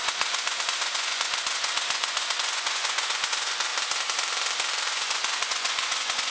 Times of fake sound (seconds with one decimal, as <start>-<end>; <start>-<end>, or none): 0.0-3.7; 4.9-6.3